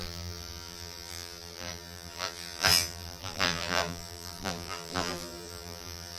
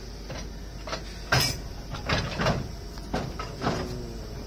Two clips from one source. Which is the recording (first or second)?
second